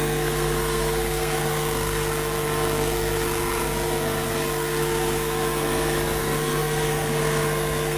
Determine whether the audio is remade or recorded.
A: remade